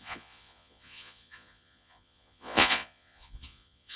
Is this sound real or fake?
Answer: fake